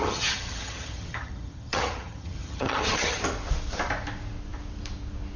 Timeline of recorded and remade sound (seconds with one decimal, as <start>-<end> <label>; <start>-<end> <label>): 0.0-3.2 remade; 3.2-5.4 recorded